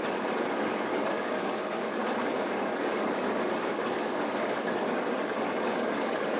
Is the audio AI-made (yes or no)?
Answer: yes